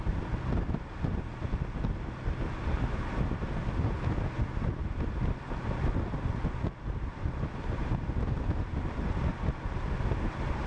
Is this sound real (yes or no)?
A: yes